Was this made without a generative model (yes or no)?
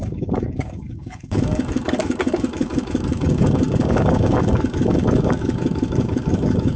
no